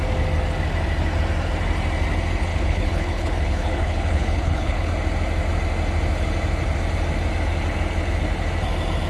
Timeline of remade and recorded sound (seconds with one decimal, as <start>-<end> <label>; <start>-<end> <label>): 0.0-2.5 recorded; 2.5-4.9 remade; 4.9-9.1 recorded